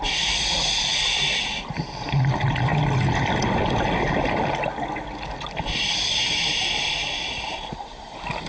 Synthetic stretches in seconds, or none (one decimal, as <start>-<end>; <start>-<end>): none